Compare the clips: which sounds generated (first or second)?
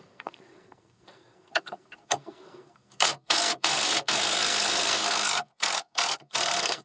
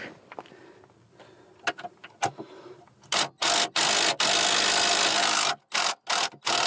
first